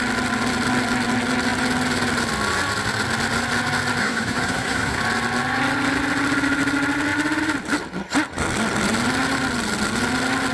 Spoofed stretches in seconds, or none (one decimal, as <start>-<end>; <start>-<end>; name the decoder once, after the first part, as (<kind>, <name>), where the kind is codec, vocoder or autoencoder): 4.0-5.0 (codec, SNAC)